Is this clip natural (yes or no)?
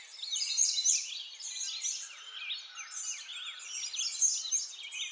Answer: yes